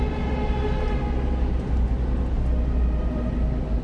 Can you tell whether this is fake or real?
real